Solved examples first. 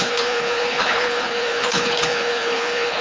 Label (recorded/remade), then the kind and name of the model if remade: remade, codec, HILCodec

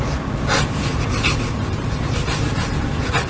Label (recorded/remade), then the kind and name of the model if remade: recorded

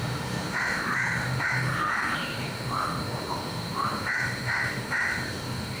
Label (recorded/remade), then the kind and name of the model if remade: remade, autoencoder, DAC-VAE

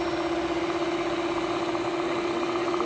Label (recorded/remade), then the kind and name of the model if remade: recorded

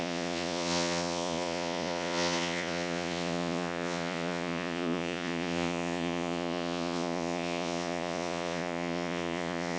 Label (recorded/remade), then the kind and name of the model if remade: remade, vocoder, Vocos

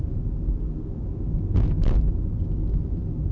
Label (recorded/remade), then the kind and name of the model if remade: recorded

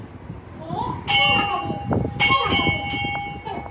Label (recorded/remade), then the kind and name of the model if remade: recorded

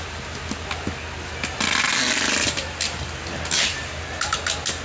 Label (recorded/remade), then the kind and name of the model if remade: recorded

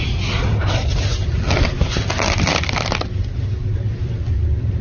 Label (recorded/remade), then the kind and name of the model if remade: recorded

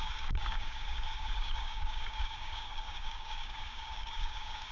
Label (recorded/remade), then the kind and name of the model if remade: remade, codec, DAC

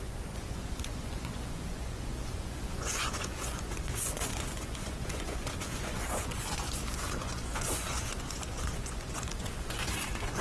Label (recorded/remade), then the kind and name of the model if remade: remade, vocoder, Vocos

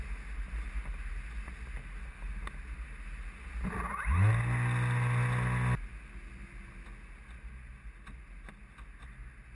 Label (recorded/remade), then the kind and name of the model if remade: recorded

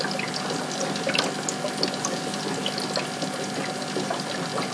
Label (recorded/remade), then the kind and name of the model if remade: recorded